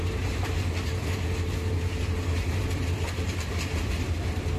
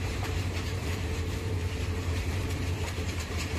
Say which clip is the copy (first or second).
second